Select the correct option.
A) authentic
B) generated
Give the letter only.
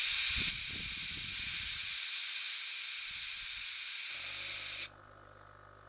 A